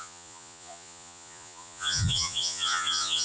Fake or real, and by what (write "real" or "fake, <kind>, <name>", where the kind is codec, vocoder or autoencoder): fake, vocoder, Vocos